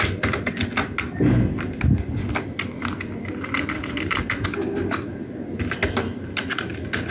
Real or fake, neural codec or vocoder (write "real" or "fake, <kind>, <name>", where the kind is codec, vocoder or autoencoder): real